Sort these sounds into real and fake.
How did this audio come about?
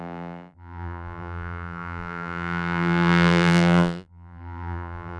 fake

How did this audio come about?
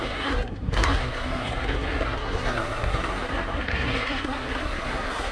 fake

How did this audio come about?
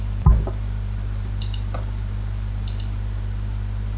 fake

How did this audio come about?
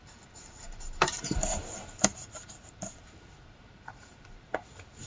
fake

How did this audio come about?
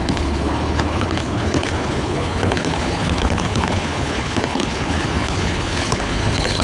fake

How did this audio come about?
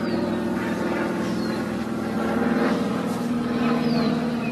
fake